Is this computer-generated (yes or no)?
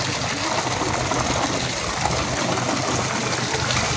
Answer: no